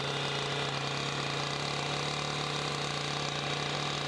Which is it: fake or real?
real